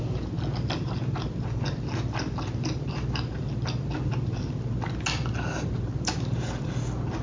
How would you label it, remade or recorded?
recorded